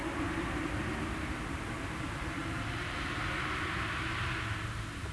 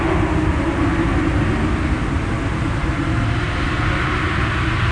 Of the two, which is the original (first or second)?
second